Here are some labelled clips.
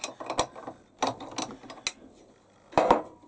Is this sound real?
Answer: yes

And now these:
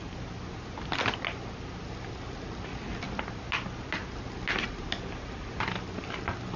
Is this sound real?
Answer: yes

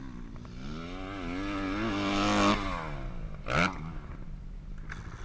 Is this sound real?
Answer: yes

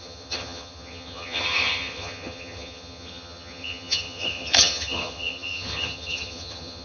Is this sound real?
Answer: no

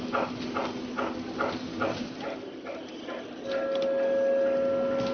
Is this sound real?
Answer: yes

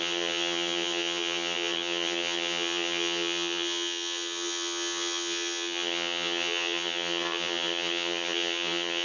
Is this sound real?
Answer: no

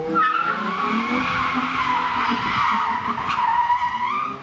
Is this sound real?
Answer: yes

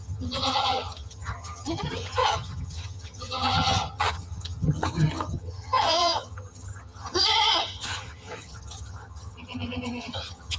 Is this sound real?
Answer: no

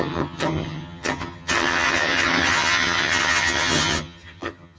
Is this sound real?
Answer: no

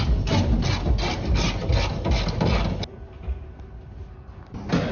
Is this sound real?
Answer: yes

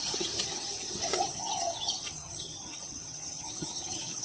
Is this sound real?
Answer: no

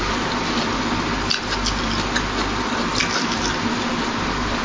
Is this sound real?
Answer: yes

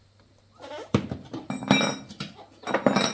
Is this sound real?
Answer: yes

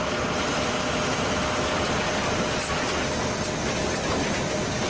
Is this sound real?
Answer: yes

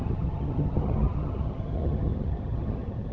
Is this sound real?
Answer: no